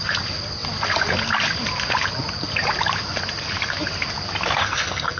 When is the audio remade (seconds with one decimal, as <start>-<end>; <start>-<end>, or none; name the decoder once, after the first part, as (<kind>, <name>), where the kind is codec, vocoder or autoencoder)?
4.6-5.2 (codec, SNAC)